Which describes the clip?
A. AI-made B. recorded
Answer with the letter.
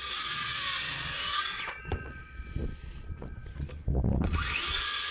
A